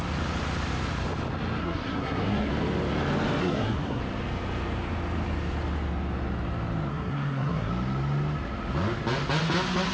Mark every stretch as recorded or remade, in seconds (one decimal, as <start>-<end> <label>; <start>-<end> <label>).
0.0-1.6 recorded; 1.6-2.5 remade; 2.5-3.4 recorded; 3.4-4.0 remade; 4.0-6.9 recorded; 6.9-7.7 remade; 7.7-9.9 recorded